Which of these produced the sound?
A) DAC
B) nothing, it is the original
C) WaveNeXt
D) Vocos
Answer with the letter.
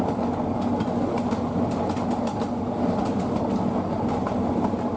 B